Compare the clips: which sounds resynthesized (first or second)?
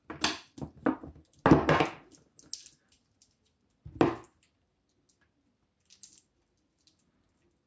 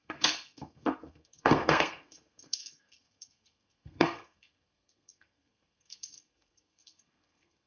second